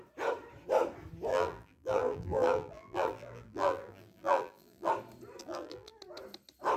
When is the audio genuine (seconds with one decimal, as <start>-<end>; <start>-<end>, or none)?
0.0-1.3; 4.9-5.4; 5.9-6.8